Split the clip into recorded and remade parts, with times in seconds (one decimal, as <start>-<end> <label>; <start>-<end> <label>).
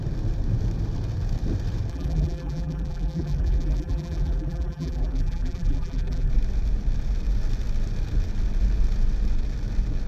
0.0-1.9 recorded; 1.9-6.3 remade; 6.3-10.1 recorded